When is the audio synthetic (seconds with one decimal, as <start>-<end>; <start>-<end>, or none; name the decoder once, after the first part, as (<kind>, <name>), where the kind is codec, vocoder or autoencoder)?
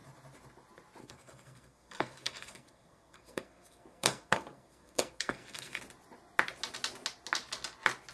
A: 1.0-5.8 (codec, SNAC)